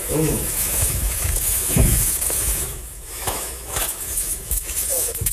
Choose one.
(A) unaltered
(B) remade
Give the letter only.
B